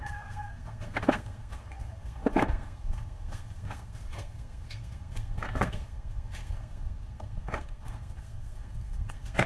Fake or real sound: fake